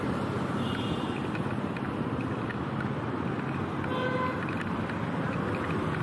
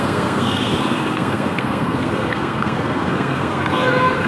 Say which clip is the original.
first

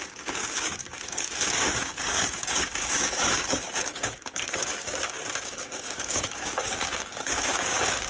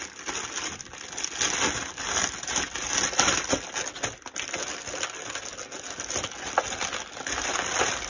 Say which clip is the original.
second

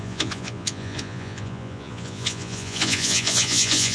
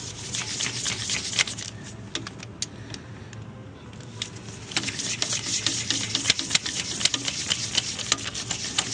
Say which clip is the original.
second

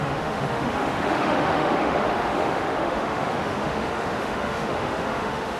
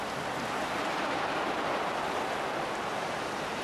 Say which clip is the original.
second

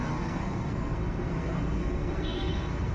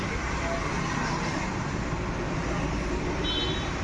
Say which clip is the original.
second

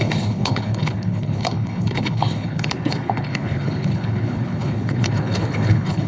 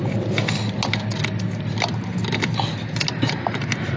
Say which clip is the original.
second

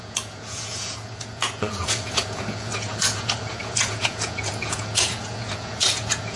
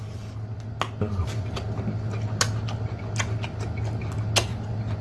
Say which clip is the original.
second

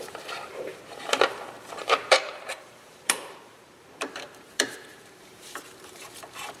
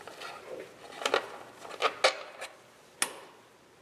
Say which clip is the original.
second